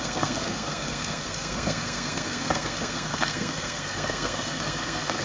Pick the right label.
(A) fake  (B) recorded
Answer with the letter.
A